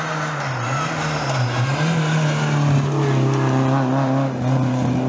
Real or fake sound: real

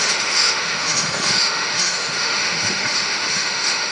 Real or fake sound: fake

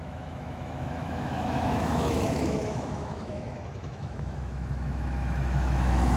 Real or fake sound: fake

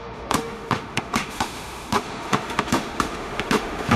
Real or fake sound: fake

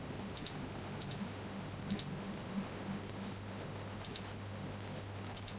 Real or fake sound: fake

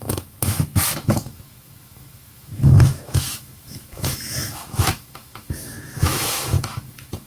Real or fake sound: fake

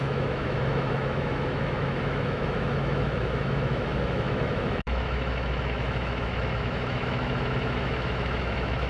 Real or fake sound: fake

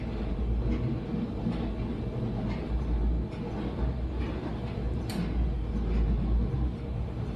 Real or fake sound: real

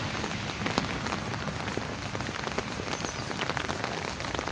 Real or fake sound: real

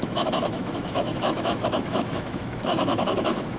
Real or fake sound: fake